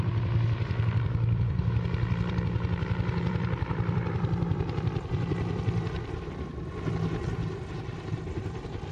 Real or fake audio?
fake